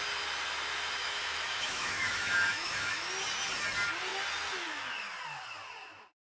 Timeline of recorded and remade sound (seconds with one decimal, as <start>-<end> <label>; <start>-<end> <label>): 0.0-1.0 recorded; 1.0-3.1 remade; 3.1-6.4 recorded